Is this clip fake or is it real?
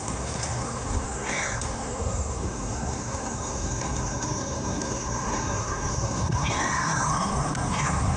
fake